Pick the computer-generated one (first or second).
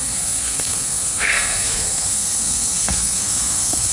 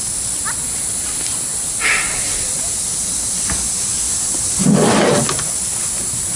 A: first